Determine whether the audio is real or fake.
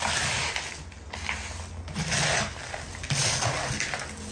real